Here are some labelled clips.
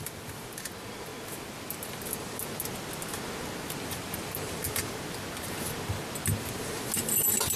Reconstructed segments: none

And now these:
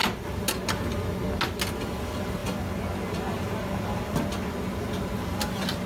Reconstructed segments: none

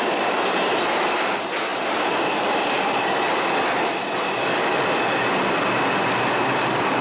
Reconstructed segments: none

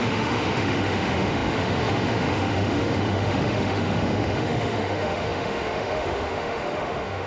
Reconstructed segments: 0.0-7.3 (autoencoder, DAC-VAE)

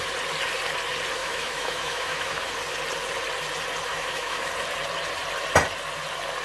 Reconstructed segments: 1.2-2.5 (autoencoder, DAC-VAE); 3.9-4.5